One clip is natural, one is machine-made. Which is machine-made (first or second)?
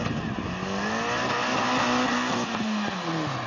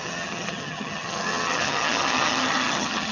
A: second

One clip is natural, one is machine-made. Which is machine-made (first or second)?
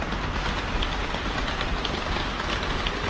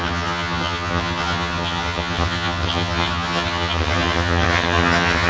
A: second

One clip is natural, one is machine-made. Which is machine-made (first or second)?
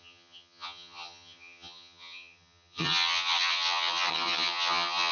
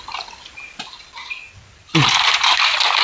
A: first